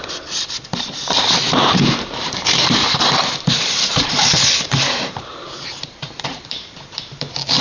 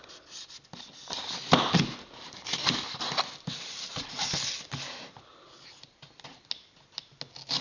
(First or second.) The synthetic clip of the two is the first